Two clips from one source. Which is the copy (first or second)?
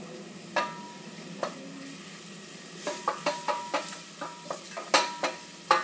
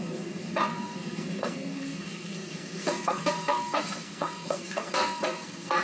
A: second